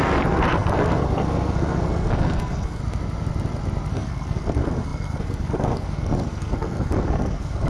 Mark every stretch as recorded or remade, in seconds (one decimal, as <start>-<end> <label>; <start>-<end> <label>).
0.0-2.8 remade; 2.8-3.9 recorded; 3.9-7.7 remade